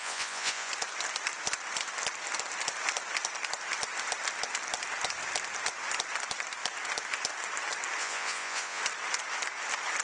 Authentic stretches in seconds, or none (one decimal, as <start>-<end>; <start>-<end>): 0.7-8.0; 8.8-10.0